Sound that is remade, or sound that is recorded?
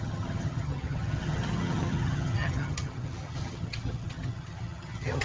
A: remade